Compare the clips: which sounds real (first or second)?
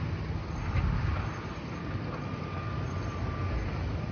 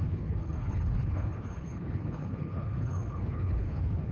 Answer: first